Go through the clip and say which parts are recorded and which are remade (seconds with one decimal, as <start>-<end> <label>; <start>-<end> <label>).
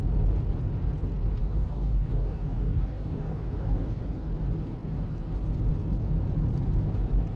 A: 0.0-1.4 recorded; 1.4-4.0 remade; 4.0-7.4 recorded